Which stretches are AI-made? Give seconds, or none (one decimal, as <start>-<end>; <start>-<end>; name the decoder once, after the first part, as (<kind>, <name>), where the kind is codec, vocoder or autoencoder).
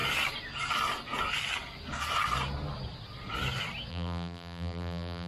3.9-5.3 (vocoder, BigVGAN v2)